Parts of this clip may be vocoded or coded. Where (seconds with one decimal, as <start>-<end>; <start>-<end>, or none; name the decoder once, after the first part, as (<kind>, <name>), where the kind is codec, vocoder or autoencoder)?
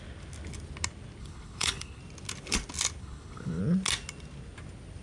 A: 1.2-2.0 (codec, HILCodec); 3.0-3.6